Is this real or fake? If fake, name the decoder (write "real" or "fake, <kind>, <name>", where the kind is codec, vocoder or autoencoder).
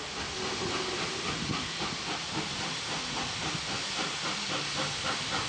real